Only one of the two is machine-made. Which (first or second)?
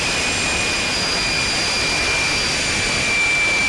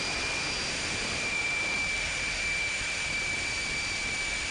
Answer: second